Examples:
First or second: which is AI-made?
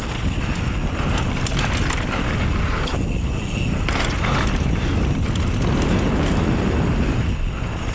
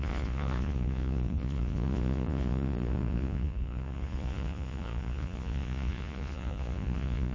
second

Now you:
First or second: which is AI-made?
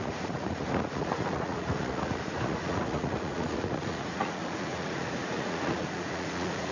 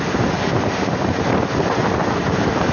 first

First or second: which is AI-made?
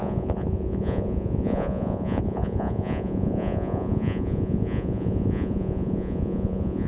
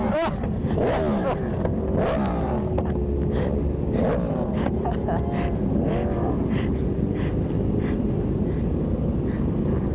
first